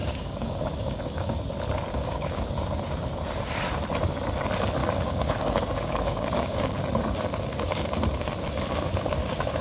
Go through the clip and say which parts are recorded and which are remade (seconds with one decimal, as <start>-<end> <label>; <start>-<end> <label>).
0.0-1.4 remade; 1.4-1.9 recorded; 1.9-2.5 remade; 2.5-4.8 recorded; 4.8-6.8 remade; 6.8-9.6 recorded